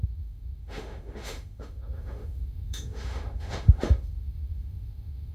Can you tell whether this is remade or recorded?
remade